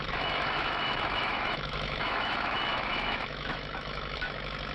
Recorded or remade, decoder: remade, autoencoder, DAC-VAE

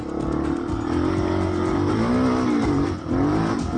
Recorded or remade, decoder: recorded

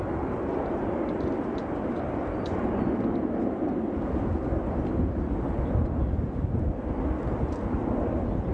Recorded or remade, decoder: recorded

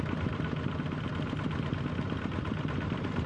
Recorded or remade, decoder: recorded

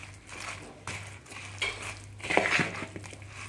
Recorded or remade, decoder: recorded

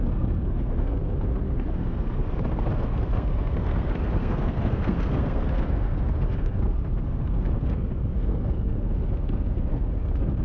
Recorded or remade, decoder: remade, codec, SNAC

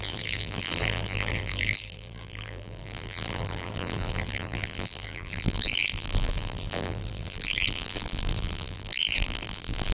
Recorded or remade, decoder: remade, vocoder, BigVGAN v2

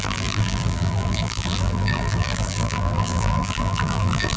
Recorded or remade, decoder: remade, vocoder, BigVGAN v2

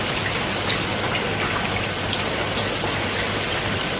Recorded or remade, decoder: recorded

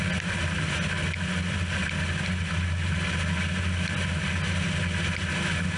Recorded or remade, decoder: recorded